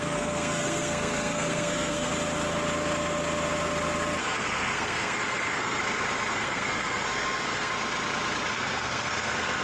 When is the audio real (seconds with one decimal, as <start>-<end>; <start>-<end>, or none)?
2.1-4.2; 5.8-6.3; 7.7-8.5